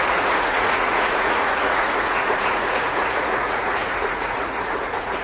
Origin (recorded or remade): remade